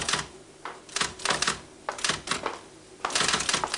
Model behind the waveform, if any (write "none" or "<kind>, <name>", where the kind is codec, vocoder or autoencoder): none